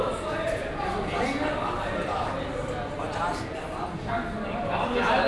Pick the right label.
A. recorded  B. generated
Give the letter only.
A